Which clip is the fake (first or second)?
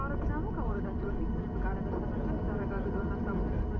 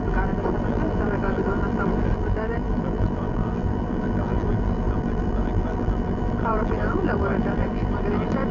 second